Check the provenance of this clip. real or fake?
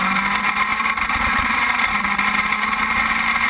real